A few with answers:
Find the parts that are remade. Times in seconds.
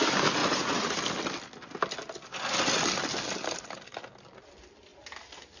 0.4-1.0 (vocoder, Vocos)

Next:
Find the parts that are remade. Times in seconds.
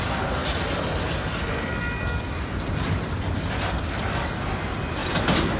none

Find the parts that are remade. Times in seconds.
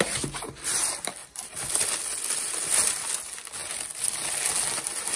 1.2-1.7 (vocoder, BigVGAN v2)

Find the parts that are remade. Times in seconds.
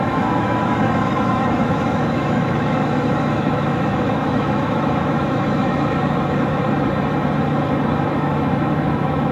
0.0-6.6 (autoencoder, DAC-VAE); 8.0-9.3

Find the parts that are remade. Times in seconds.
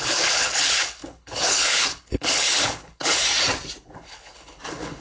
0.0-3.2 (codec, HILCodec); 3.8-5.0